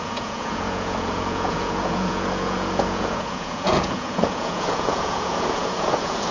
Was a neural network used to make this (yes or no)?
yes